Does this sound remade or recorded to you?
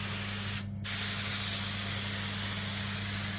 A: recorded